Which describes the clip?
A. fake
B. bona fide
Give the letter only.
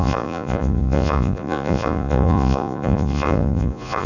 A